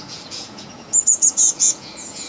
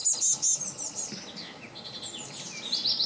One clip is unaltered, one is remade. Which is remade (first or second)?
first